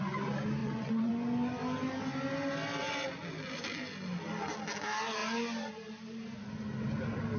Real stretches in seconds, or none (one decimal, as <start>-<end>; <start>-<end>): 0.0-0.6; 1.1-7.4